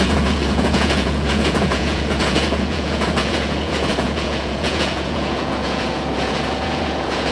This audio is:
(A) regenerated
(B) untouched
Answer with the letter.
A